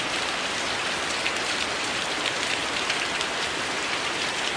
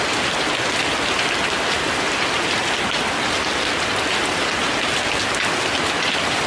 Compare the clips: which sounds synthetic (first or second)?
first